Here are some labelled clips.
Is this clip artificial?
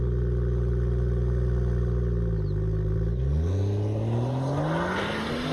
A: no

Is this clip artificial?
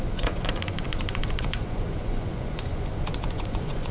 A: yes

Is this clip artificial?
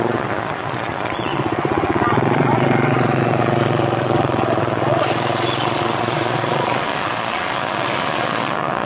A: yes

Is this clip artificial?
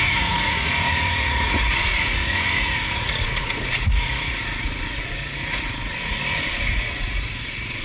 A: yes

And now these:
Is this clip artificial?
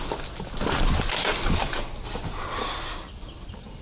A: no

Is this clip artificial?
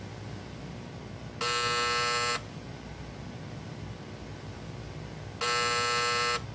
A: no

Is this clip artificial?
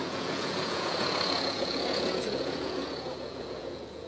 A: yes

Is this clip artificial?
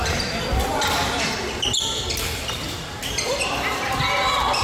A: no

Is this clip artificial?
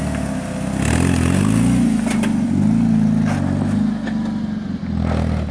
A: no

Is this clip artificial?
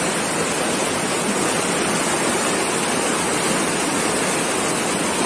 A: no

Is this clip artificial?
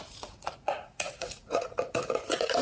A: yes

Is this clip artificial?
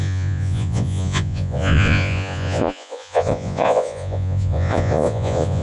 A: yes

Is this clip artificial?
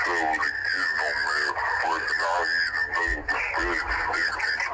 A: no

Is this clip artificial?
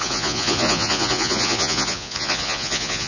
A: yes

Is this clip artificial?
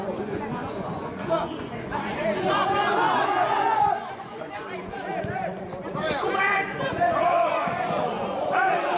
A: yes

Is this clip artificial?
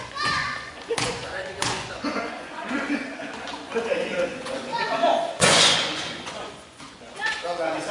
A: yes